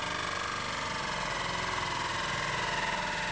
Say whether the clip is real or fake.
real